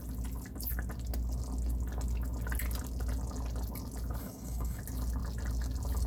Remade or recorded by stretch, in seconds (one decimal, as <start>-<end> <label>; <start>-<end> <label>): 0.0-4.2 recorded; 4.2-4.8 remade; 4.8-6.1 recorded